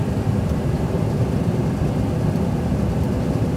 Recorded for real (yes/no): no